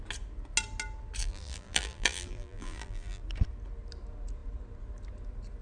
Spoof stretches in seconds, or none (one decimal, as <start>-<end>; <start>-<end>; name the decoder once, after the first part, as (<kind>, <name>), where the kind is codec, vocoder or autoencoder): 1.2-3.2 (vocoder, BigVGAN v2)